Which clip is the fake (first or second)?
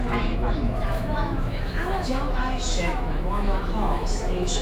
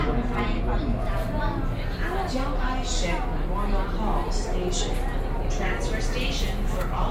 first